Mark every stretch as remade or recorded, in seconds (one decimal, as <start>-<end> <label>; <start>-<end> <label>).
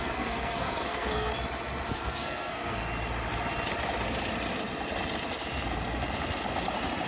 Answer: 0.0-1.3 remade; 1.3-1.9 recorded; 1.9-2.8 remade; 2.8-7.1 recorded